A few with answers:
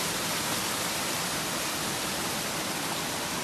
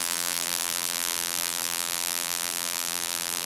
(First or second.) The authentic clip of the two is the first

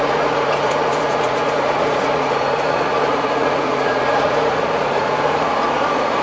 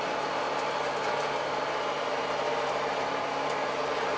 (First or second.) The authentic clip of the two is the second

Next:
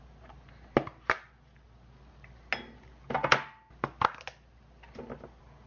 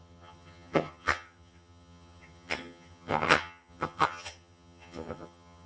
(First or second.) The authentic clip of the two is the first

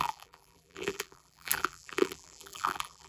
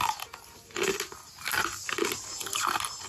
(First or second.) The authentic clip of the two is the second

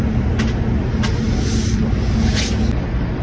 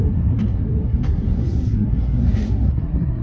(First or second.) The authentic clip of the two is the first